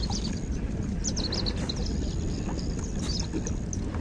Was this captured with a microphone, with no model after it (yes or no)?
yes